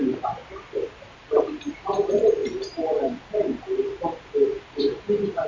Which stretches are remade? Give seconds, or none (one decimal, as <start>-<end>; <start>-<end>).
0.0-0.4; 1.7-2.4; 4.7-5.5